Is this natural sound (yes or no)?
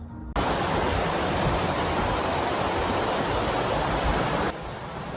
yes